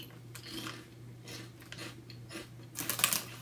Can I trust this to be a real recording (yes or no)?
yes